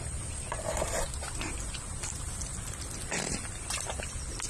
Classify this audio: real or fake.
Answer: real